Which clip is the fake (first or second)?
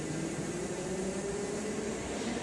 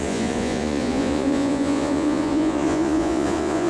second